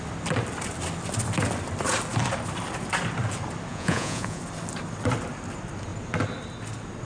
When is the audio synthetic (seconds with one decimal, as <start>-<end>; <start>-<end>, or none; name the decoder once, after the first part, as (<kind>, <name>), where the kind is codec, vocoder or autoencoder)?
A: 3.7-4.4 (vocoder, Vocos)